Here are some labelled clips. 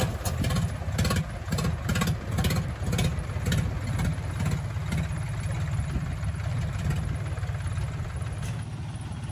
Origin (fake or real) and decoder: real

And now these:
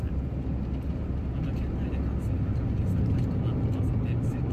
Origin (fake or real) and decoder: real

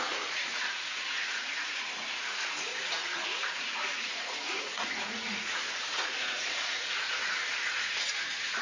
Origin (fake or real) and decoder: fake, vocoder, Vocos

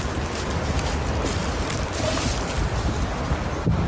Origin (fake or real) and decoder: fake, vocoder, BigVGAN v2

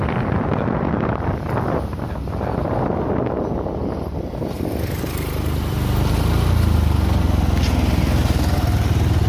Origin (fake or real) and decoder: real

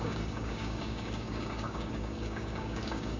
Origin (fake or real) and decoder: fake, codec, DAC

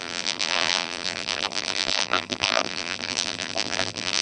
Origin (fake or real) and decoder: fake, vocoder, BigVGAN v2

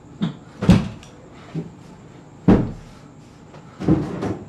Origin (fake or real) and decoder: real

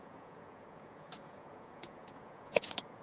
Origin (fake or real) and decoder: fake, vocoder, Vocos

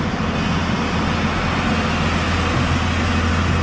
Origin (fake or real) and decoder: real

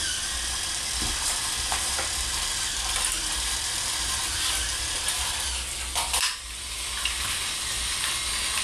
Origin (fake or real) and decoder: real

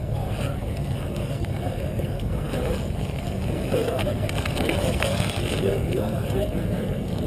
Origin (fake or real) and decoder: fake, codec, SNAC